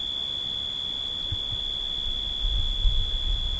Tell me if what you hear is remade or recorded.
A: recorded